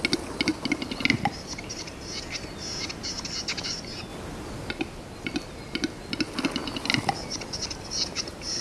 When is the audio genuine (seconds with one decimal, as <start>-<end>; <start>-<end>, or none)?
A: 0.0-8.6